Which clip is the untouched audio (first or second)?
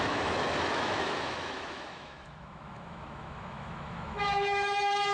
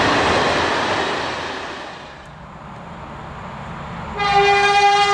second